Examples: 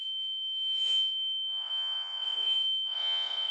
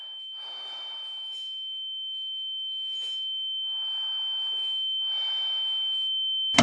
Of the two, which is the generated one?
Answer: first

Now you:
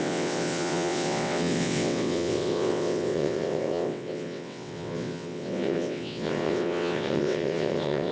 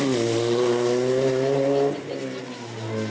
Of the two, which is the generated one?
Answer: first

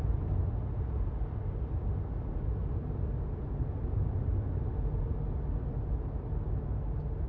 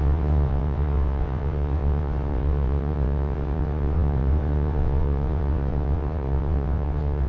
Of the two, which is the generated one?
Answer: second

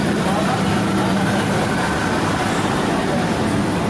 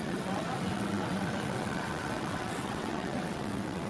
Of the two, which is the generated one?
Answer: second